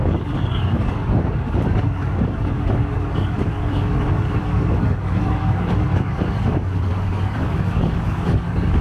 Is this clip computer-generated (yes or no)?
yes